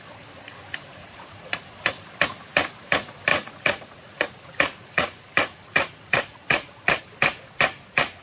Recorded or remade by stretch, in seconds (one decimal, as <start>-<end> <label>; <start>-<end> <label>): 0.0-0.9 recorded; 0.9-1.6 remade; 1.6-3.3 recorded; 3.3-7.0 remade; 7.0-8.2 recorded

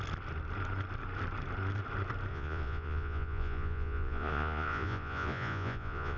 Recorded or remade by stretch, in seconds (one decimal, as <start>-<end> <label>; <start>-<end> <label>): 0.0-2.3 recorded; 2.3-6.2 remade